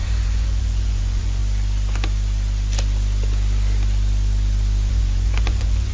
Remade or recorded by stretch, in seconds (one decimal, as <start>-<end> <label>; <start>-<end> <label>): 0.0-1.4 remade; 1.4-4.9 recorded; 4.9-5.9 remade